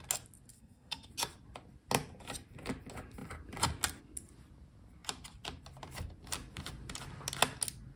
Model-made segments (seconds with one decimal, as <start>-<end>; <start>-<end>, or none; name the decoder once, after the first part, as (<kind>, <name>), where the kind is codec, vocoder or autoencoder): 0.5-1.1 (codec, SNAC)